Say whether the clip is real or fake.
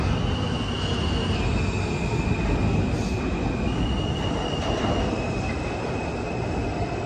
real